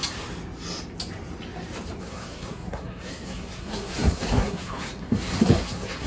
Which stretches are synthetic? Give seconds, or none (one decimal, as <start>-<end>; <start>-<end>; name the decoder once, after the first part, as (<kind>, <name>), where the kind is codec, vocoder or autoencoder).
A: 2.0-6.1 (codec, SNAC)